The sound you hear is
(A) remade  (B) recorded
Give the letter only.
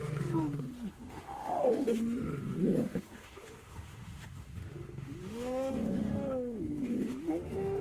A